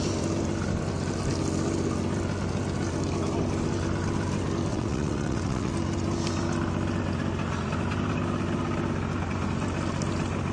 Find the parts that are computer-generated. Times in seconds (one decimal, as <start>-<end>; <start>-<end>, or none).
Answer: 4.7-5.7